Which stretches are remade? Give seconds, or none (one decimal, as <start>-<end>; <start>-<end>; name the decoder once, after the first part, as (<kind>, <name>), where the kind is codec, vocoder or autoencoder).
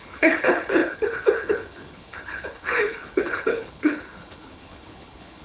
0.0-5.4 (codec, HILCodec)